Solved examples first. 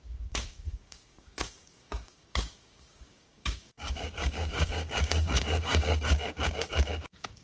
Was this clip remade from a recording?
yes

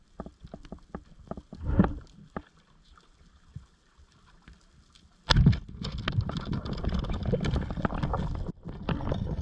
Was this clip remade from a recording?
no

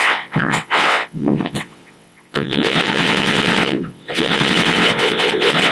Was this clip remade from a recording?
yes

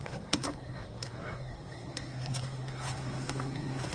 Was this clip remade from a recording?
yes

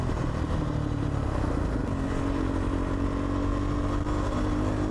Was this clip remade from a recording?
no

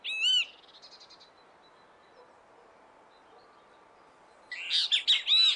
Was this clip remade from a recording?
no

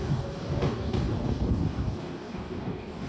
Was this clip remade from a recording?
yes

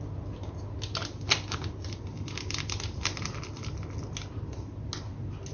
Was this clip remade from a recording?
no